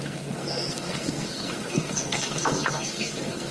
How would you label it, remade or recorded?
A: remade